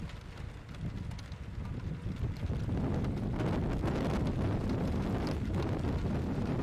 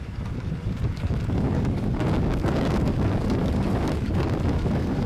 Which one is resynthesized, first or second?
second